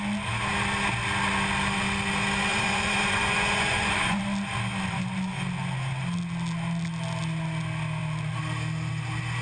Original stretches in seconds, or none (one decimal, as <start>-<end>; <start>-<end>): 0.0-2.5; 4.2-9.4